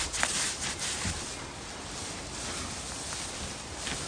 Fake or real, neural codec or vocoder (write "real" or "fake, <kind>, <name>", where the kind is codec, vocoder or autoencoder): real